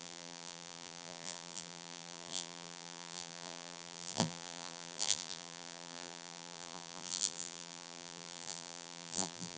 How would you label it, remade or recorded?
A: remade